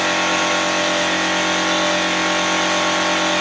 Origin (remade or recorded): recorded